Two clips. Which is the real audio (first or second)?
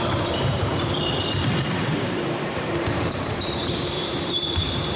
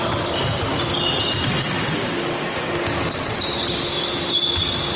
second